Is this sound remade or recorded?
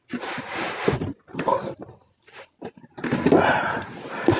recorded